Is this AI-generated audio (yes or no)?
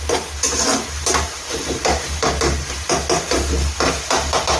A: no